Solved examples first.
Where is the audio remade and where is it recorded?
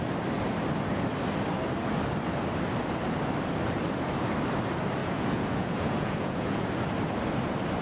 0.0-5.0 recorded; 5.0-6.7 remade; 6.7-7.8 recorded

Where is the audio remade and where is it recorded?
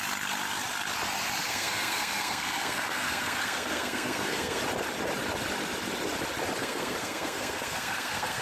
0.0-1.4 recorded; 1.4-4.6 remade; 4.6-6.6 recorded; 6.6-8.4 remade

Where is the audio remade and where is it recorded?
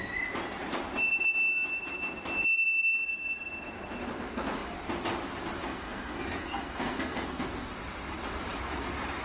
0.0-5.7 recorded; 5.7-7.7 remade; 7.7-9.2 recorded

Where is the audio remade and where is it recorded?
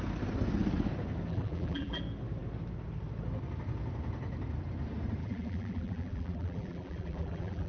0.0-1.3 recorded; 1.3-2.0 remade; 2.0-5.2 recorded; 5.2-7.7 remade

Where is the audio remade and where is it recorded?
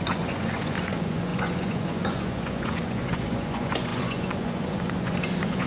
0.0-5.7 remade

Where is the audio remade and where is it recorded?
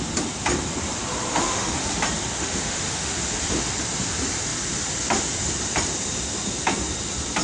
0.0-1.3 recorded; 1.3-2.0 remade; 2.0-2.4 recorded; 2.4-3.2 remade; 3.2-7.4 recorded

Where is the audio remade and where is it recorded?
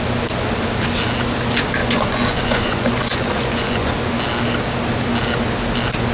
0.0-1.8 recorded; 1.8-3.9 remade; 3.9-6.1 recorded